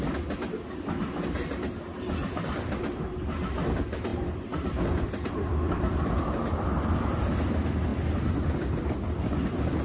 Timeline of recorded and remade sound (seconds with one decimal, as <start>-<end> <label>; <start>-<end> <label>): 0.0-9.8 recorded